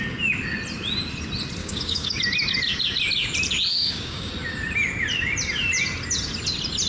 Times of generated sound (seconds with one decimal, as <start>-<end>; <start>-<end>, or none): 1.6-2.2; 3.7-4.3